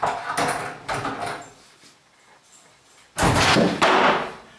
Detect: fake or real real